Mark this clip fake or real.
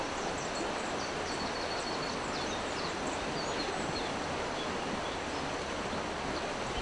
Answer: real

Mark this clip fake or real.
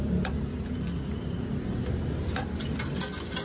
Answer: real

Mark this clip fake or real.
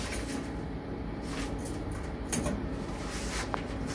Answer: fake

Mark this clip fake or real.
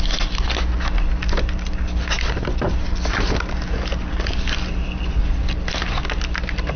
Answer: real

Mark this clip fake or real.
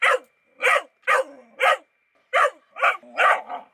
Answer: fake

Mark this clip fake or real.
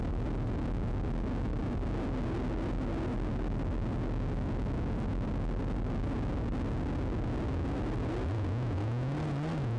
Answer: real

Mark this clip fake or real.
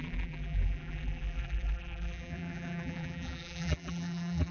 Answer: fake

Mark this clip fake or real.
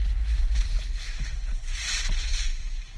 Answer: fake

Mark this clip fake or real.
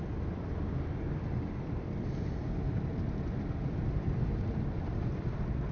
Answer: fake